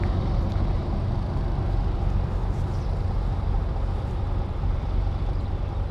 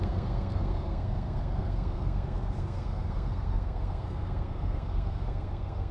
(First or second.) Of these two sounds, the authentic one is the first